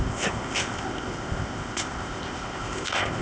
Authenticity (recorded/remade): remade